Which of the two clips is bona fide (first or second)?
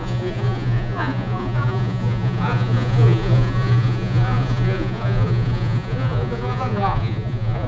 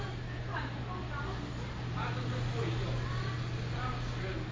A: second